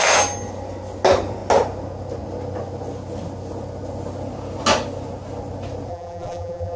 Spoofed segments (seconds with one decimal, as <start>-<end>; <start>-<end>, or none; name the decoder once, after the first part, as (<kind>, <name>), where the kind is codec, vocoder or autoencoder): 5.9-6.8 (vocoder, BigVGAN v2)